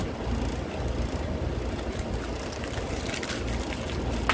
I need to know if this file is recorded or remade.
recorded